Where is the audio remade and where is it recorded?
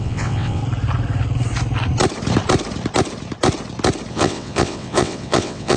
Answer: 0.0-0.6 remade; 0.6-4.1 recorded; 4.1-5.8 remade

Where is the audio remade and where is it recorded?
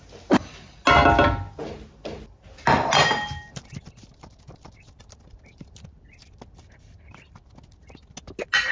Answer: 0.0-8.7 recorded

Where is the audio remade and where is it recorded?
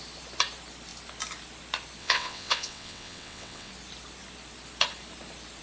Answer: 0.0-2.0 recorded; 2.0-3.7 remade; 3.7-5.6 recorded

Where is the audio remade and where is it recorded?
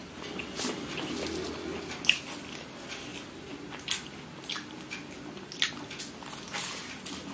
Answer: 0.0-7.3 recorded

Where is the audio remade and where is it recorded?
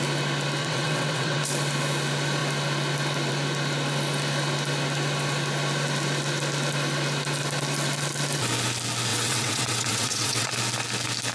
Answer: 0.0-0.6 recorded; 0.6-1.4 remade; 1.4-9.1 recorded; 9.1-10.5 remade; 10.5-11.3 recorded